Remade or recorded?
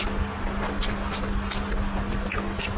recorded